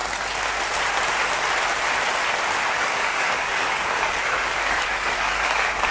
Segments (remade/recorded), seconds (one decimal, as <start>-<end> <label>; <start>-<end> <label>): 0.0-2.7 recorded; 2.7-5.9 remade